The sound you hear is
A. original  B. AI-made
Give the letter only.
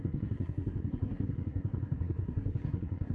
B